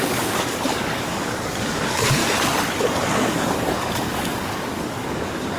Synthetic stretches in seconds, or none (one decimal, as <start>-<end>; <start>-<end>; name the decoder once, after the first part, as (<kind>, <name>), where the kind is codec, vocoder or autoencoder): 0.0-2.2 (codec, DAC); 2.8-5.6